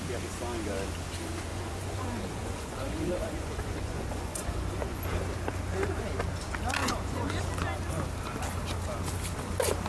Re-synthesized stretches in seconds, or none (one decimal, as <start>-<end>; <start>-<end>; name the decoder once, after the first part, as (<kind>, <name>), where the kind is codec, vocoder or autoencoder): 1.5-5.0 (vocoder, Vocos); 6.8-7.4

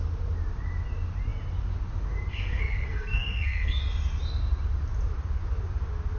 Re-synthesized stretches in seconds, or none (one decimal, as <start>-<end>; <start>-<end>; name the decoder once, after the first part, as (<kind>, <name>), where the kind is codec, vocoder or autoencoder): 2.3-3.8 (codec, SNAC)

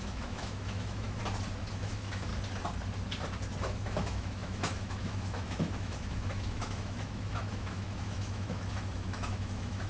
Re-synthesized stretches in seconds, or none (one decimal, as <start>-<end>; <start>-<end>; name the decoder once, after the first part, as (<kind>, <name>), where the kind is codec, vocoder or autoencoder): 0.0-1.2 (autoencoder, DAC-VAE); 1.7-2.3; 3.6-9.9

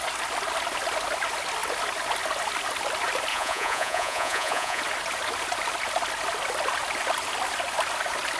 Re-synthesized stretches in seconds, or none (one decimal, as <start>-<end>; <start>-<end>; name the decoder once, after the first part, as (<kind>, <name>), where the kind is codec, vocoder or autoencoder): 3.3-4.8 (vocoder, Vocos)

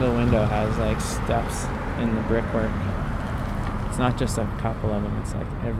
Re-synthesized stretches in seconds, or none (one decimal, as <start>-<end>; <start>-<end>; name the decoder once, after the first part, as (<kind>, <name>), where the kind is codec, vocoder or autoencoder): none

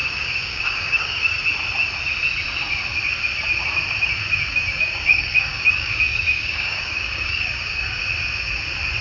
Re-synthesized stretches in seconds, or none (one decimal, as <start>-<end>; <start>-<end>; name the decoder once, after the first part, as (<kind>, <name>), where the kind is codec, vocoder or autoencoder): 0.0-1.4 (codec, DAC); 4.5-8.0

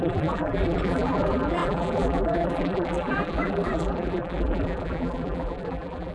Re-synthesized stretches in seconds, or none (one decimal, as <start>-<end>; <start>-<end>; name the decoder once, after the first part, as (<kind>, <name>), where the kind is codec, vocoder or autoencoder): 0.0-6.1 (vocoder, BigVGAN v2)

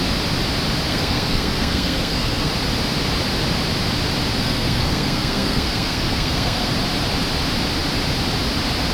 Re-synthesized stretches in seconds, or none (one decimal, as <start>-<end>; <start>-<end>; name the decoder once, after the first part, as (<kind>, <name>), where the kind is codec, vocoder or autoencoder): 0.9-2.5 (codec, SNAC); 4.4-6.7